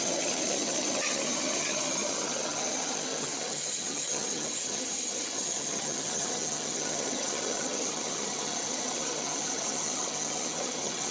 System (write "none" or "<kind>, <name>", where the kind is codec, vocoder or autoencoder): vocoder, HiFi-GAN